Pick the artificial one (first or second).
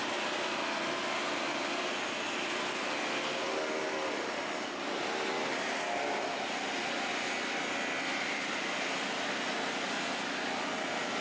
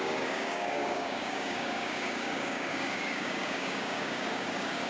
second